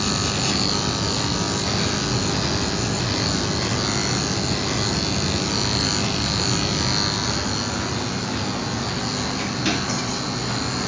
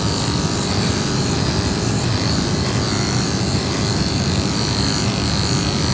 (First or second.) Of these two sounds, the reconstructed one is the second